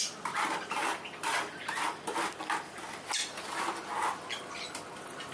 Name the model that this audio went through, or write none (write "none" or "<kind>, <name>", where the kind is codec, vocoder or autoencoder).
none